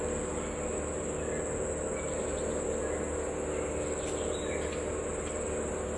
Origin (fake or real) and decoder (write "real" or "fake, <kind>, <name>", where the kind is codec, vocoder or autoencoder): real